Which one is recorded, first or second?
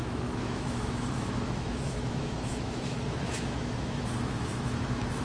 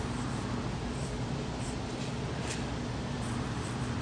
second